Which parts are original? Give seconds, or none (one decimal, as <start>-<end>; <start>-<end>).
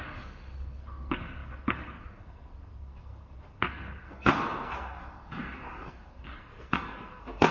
none